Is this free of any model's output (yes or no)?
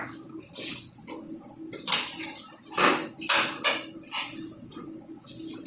yes